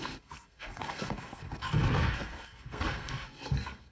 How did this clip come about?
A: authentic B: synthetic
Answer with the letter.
B